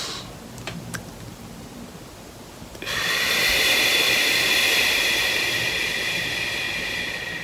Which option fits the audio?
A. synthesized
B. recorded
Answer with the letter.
A